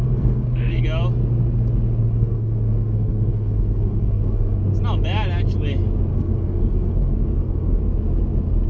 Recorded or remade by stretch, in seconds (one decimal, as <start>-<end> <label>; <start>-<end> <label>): 0.0-0.8 remade; 0.8-2.0 recorded; 2.0-4.6 remade; 4.6-6.1 recorded; 6.1-7.8 remade; 7.8-8.7 recorded